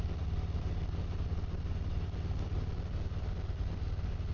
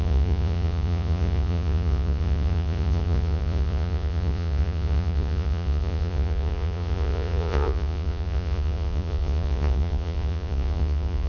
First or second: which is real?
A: first